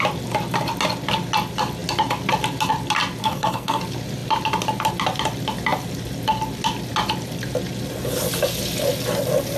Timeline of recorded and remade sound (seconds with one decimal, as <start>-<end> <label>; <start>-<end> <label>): 0.0-3.2 recorded; 3.2-3.8 remade; 3.8-9.6 recorded